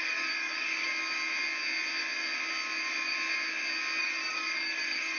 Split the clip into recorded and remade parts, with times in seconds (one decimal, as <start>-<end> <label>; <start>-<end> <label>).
0.0-0.9 remade; 0.9-4.0 recorded; 4.0-5.2 remade